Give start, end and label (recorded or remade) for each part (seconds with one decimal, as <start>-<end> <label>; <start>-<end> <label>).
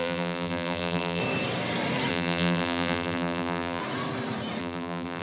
0.0-1.2 remade; 1.2-2.1 recorded; 2.1-3.8 remade; 3.8-4.6 recorded; 4.6-5.2 remade